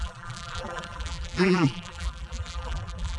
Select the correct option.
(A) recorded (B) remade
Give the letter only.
B